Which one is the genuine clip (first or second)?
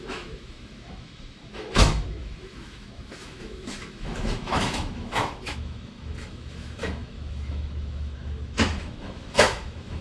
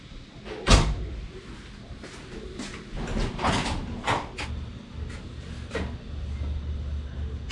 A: second